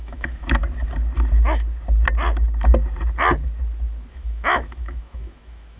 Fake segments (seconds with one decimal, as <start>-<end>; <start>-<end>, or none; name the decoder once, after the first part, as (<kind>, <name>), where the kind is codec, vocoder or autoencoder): 0.0-0.6 (autoencoder, DAC-VAE); 4.1-5.8